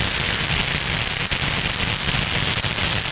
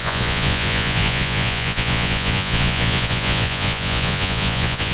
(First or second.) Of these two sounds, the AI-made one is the second